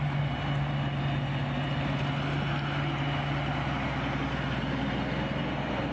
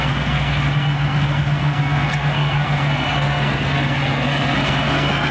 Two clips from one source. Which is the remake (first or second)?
second